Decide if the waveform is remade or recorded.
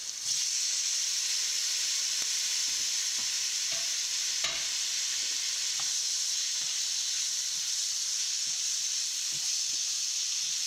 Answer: recorded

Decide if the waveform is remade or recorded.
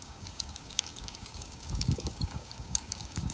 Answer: remade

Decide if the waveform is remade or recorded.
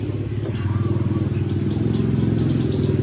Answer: recorded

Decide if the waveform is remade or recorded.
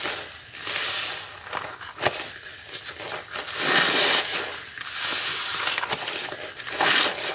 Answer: recorded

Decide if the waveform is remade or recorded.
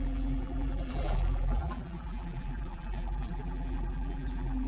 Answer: remade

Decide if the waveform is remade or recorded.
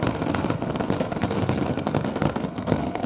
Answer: remade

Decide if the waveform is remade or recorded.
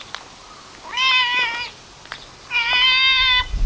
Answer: recorded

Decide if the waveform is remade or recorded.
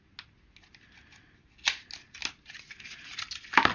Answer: recorded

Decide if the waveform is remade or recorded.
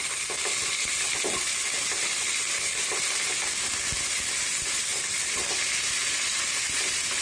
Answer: recorded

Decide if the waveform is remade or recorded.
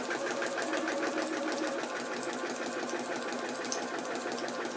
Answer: recorded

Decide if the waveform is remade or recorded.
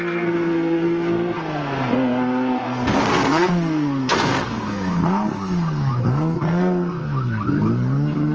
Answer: remade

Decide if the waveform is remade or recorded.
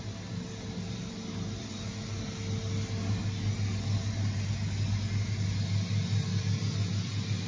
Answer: recorded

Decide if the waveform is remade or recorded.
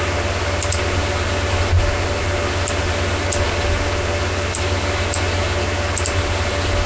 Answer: recorded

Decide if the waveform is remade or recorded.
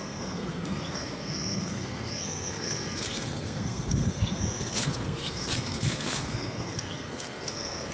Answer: remade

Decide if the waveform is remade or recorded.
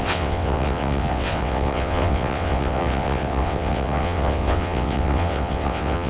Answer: remade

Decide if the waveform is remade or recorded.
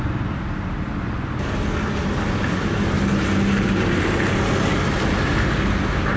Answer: recorded